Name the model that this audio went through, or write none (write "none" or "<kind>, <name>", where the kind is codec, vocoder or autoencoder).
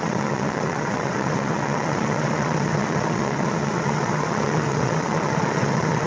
vocoder, WaveNeXt